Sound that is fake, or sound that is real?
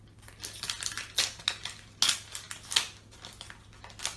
real